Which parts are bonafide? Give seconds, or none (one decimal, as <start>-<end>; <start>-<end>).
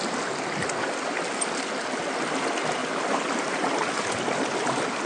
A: 0.0-5.1